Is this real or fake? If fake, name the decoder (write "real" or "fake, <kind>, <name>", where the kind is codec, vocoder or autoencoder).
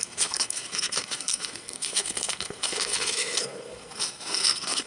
fake, codec, SNAC